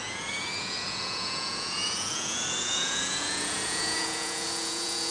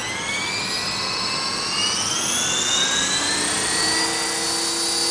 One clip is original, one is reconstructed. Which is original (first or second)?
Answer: second